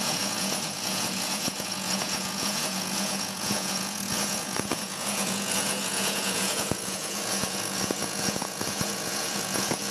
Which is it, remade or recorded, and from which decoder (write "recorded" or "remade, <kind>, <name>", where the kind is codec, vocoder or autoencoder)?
remade, vocoder, Vocos